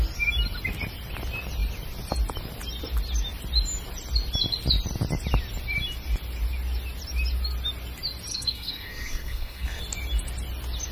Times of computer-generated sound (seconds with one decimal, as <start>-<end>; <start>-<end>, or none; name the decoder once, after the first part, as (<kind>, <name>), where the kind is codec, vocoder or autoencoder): 8.3-9.8 (codec, SNAC)